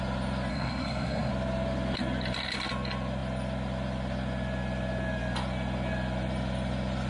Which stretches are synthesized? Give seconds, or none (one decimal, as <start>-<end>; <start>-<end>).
0.5-1.3